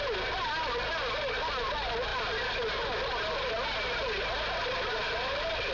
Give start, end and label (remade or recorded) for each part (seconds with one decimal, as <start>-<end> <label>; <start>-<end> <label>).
0.0-5.7 recorded